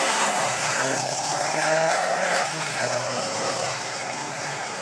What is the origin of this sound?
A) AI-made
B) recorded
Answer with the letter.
A